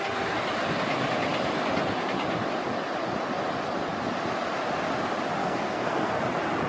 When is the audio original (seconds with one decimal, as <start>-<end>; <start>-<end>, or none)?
0.0-5.4; 6.2-6.7